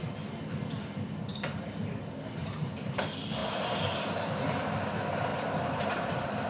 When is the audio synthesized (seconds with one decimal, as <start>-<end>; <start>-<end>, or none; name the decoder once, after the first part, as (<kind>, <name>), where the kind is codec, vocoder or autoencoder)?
1.3-2.0 (vocoder, BigVGAN v2); 2.4-3.0; 3.4-4.4; 5.3-6.1